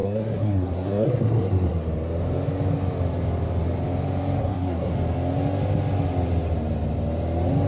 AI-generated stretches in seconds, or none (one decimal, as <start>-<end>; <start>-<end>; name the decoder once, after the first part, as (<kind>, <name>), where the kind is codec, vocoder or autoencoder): 0.0-1.8 (codec, SNAC); 4.4-4.9